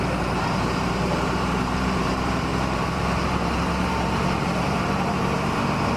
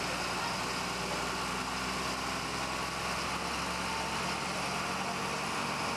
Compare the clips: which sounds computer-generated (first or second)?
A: first